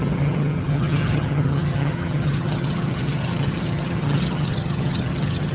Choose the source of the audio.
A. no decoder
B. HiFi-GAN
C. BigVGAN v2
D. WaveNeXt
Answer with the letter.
B